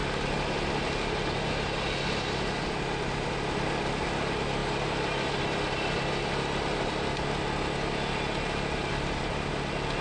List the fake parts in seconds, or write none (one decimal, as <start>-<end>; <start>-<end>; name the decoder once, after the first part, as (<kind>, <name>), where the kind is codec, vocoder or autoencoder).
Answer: 4.6-6.9 (vocoder, BigVGAN v2); 8.8-9.5